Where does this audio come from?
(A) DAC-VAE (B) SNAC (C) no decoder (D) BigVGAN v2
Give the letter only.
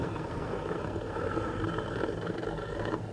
B